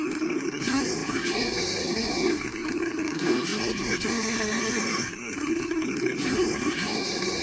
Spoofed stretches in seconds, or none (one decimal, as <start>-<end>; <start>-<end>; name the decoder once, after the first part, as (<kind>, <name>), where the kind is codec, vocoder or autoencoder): 0.0-7.4 (codec, SNAC)